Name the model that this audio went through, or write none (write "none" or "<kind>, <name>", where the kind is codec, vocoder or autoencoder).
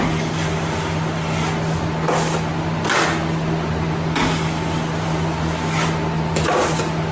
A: none